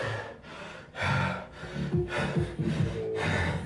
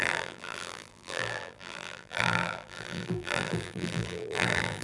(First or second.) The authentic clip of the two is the first